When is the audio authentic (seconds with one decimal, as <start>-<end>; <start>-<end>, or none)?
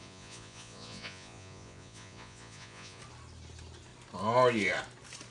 3.0-5.3